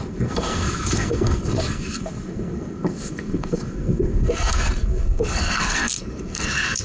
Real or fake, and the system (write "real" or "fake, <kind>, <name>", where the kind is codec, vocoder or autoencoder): fake, codec, SNAC